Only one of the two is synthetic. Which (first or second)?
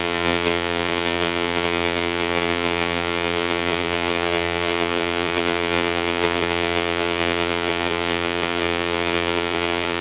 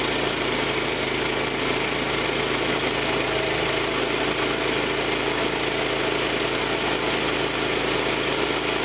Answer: first